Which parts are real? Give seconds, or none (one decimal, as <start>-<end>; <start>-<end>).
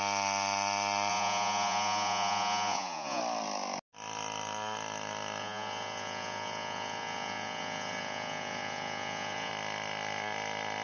0.0-1.1; 3.2-5.4; 9.5-10.8